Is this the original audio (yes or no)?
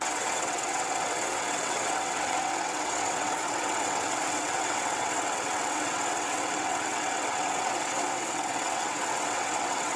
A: no